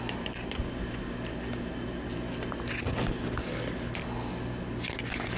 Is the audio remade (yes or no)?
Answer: no